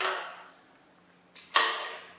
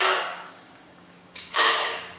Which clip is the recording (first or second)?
first